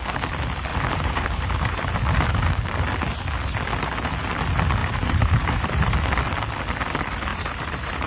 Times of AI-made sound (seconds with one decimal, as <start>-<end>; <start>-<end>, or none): 0.7-2.0; 4.8-5.9; 7.3-8.1